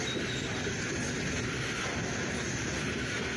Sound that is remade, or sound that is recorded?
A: recorded